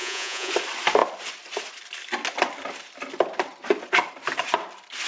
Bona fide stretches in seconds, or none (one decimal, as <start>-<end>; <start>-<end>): 0.5-5.1